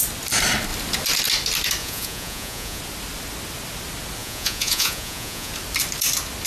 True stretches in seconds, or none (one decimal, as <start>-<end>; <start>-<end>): 0.0-1.8; 2.8-4.2; 5.5-6.5